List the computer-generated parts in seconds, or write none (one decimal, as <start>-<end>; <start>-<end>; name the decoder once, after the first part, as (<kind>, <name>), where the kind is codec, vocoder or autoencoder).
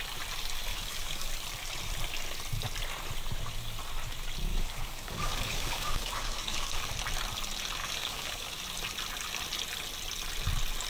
0.7-1.3 (codec, DAC); 4.5-6.9; 7.8-8.6